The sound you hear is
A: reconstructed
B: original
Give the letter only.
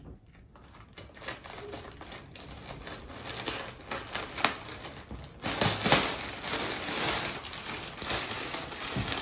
B